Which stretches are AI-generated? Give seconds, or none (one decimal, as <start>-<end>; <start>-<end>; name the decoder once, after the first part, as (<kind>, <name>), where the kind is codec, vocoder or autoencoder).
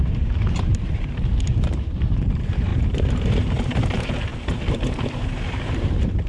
0.0-6.3 (vocoder, BigVGAN v2)